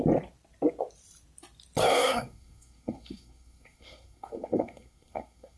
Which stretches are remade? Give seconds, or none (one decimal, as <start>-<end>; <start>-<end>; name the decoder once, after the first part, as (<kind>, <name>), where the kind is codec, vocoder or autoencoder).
1.9-5.6 (codec, SNAC)